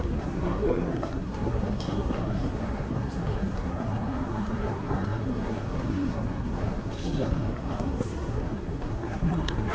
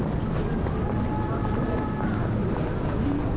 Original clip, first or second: second